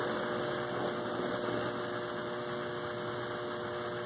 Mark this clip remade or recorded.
recorded